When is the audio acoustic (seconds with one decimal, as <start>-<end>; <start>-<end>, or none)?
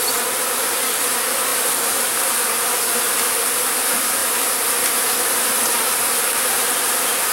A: 0.0-7.3